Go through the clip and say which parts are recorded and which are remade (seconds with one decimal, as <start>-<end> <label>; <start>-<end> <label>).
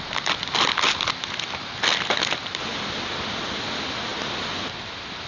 0.0-5.3 recorded